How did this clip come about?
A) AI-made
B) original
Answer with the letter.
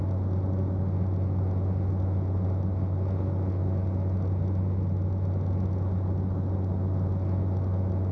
B